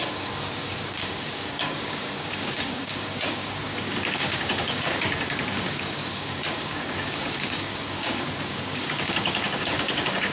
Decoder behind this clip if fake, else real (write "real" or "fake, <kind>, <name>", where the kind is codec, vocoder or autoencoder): fake, codec, DAC